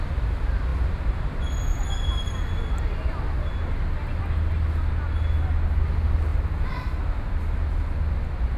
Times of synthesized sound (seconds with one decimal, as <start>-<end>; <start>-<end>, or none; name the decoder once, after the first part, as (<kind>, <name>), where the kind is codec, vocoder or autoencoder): none